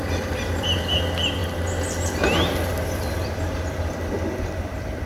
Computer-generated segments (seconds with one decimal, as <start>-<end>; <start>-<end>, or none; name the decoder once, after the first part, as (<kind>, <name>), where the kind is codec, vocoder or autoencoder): 0.0-1.4 (vocoder, BigVGAN v2); 3.1-5.1